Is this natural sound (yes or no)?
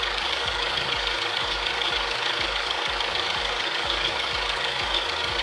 no